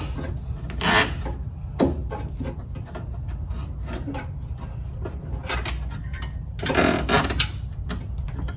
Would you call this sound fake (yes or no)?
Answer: no